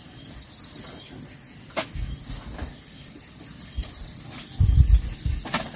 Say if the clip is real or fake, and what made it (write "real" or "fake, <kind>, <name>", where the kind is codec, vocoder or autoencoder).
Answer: real